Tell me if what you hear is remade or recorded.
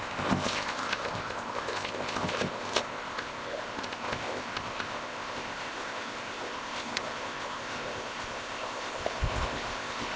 remade